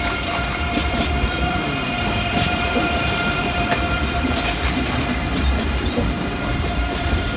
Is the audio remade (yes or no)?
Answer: yes